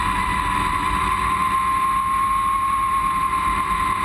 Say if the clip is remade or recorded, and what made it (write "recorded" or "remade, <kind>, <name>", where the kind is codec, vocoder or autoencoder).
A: recorded